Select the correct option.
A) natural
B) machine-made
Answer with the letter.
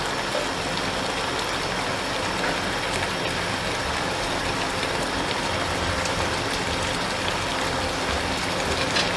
A